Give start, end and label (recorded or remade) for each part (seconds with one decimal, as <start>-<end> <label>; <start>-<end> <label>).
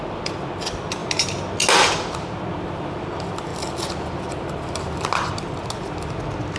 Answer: 0.0-6.6 recorded